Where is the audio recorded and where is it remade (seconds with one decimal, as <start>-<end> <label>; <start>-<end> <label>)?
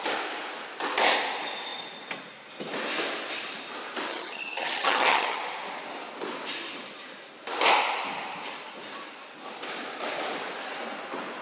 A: 0.0-4.1 recorded; 4.1-5.4 remade; 5.4-11.4 recorded